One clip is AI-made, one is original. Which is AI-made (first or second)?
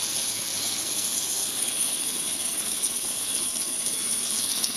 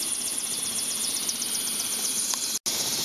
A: first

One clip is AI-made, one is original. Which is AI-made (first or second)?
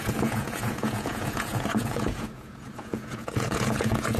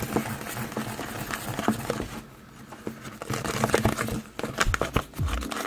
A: first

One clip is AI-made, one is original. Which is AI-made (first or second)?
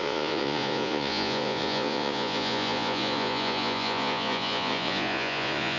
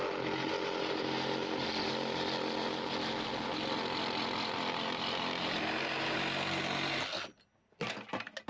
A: first